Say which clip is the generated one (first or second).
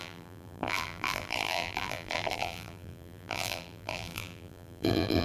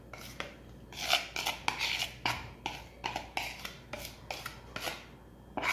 first